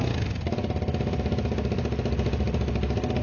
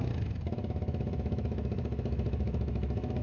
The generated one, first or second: second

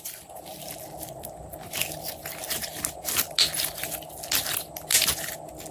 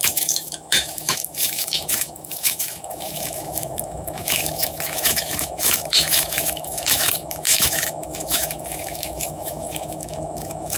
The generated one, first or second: second